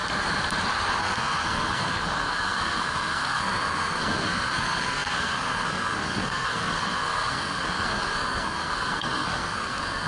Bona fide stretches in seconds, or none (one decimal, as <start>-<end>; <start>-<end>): 0.0-1.0